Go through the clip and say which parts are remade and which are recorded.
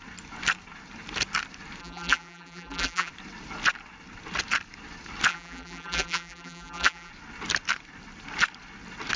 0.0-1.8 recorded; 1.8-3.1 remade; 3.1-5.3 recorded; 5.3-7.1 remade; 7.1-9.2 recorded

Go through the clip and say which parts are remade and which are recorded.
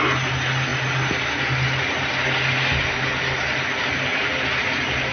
0.0-5.1 recorded